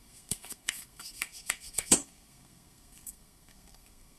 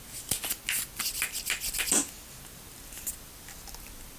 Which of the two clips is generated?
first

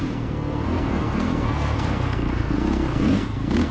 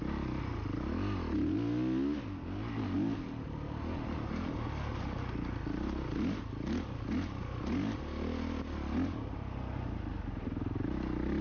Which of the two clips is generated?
first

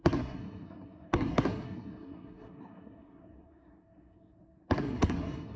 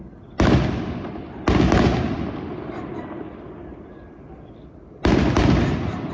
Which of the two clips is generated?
first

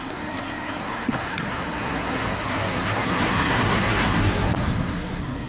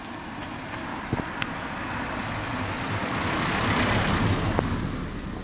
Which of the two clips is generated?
first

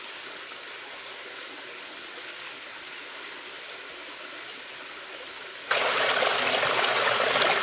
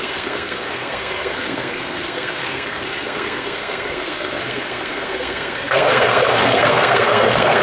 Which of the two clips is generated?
second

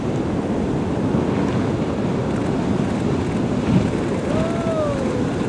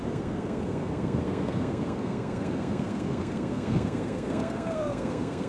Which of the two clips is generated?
second